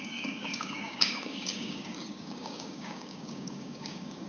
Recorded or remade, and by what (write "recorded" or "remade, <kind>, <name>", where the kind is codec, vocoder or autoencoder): remade, codec, DAC